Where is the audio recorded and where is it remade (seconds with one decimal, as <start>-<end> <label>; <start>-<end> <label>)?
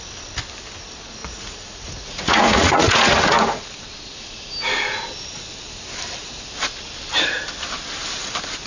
0.0-1.2 recorded; 1.2-3.6 remade; 3.6-8.7 recorded